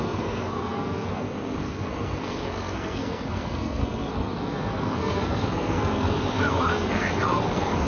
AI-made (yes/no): yes